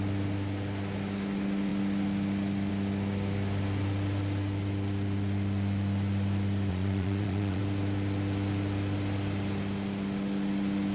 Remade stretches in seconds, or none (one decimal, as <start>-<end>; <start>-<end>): 6.7-7.6